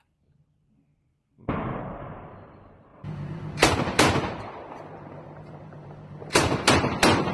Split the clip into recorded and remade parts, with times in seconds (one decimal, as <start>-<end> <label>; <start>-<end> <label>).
0.0-2.9 recorded; 2.9-6.6 remade; 6.6-7.3 recorded